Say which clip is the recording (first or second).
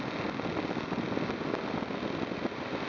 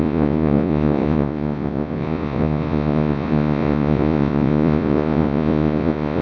first